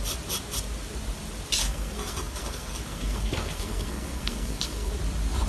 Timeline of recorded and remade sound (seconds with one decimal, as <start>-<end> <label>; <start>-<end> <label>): 0.0-1.6 recorded; 1.6-4.9 remade; 4.9-5.5 recorded